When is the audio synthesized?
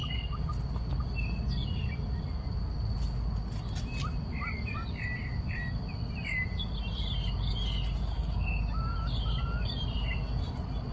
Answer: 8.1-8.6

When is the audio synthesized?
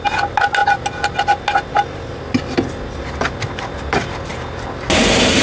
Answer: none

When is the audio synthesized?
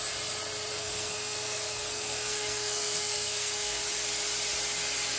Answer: 0.7-3.8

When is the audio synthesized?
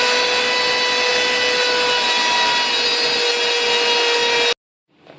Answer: none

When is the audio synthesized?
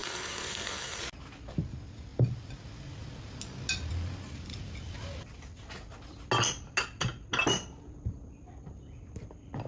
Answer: 0.0-1.0